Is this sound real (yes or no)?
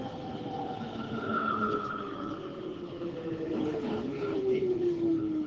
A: no